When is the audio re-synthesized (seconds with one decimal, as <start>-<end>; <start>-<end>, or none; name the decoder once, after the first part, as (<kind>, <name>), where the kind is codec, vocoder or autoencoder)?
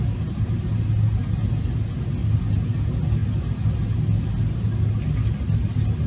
none